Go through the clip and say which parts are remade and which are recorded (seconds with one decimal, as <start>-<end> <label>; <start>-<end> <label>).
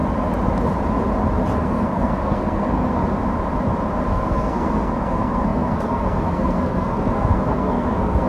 0.0-1.5 recorded; 1.5-3.0 remade; 3.0-4.1 recorded; 4.1-8.3 remade